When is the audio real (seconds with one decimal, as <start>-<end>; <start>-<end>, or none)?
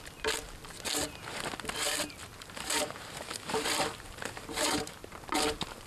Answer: 0.0-2.3; 5.0-5.9